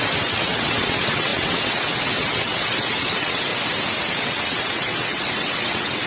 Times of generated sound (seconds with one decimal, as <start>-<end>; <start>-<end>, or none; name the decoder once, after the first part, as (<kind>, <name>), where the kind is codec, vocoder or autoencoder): 0.0-3.5 (vocoder, WaveNeXt); 4.1-6.1